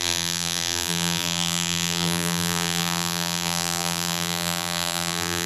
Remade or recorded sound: remade